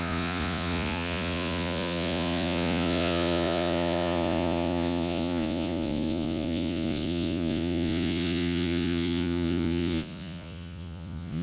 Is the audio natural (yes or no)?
no